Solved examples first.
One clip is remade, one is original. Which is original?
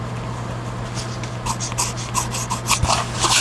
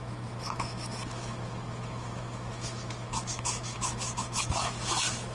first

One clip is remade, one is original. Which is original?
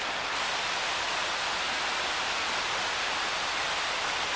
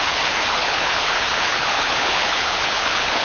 first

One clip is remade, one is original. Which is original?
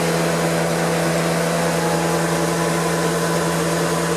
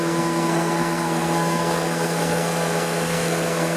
first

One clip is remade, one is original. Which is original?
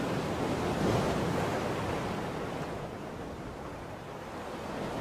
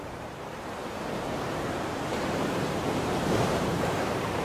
first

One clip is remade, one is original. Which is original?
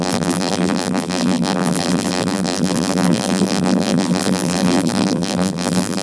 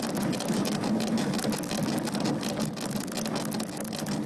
second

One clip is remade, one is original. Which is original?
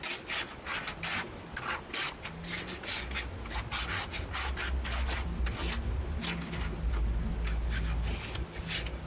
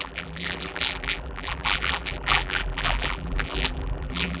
first